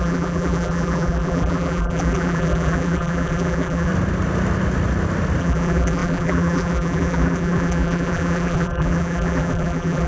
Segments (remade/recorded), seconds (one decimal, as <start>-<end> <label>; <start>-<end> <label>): 0.0-3.9 remade; 3.9-5.4 recorded; 5.4-10.1 remade